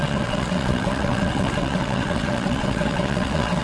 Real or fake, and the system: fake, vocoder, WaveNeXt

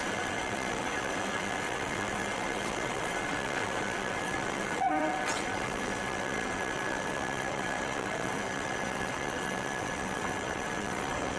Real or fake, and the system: fake, vocoder, WaveNeXt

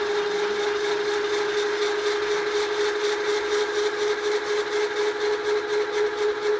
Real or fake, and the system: real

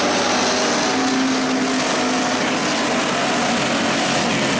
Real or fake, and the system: real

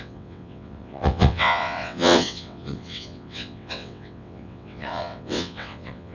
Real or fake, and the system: fake, vocoder, WaveNeXt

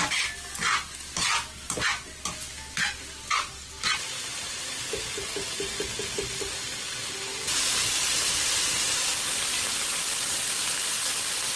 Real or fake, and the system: real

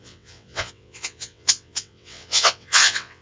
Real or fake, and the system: fake, vocoder, WaveNeXt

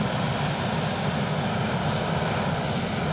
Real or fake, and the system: real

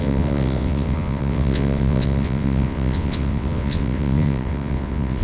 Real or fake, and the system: fake, vocoder, WaveNeXt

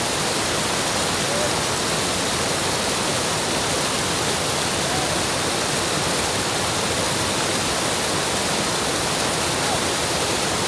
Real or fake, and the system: real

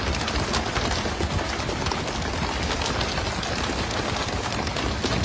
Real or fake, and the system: real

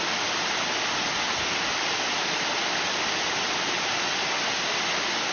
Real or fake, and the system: real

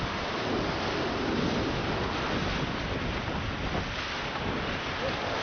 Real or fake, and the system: real